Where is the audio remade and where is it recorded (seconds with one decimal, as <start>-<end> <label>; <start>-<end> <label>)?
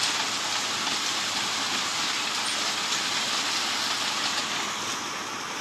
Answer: 0.0-5.6 recorded